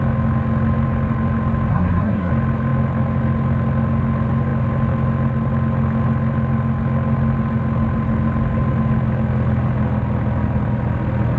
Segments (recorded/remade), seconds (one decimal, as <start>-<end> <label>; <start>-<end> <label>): 0.0-1.7 recorded; 1.7-2.3 remade; 2.3-11.4 recorded